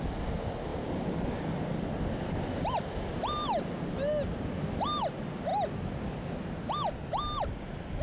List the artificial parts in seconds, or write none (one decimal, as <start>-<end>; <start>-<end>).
none